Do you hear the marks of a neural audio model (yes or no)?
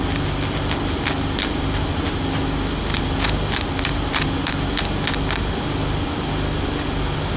no